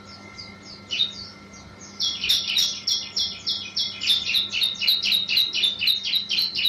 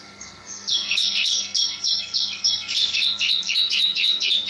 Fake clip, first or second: second